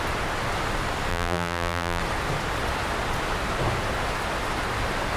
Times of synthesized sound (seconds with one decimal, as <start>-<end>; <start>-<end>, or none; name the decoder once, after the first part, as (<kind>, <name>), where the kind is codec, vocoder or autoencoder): 1.1-2.0 (vocoder, BigVGAN v2)